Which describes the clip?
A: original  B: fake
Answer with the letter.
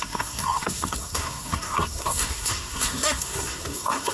B